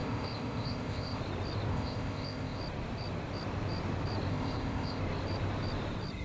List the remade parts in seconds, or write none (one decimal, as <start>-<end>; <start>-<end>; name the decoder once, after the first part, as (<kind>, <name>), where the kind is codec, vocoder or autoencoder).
0.0-1.2 (codec, ZipCodec); 1.7-2.6; 4.3-5.0